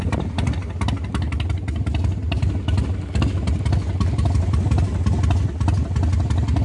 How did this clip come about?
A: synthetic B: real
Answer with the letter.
B